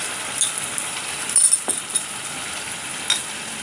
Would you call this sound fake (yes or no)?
no